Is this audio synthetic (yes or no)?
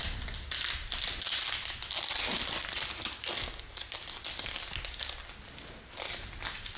no